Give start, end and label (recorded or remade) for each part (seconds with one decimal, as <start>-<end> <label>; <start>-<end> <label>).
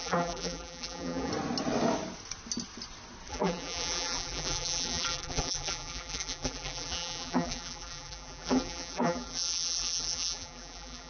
0.0-1.3 remade; 1.3-3.3 recorded; 3.3-11.1 remade